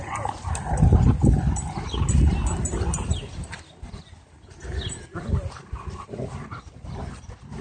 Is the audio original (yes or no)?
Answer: yes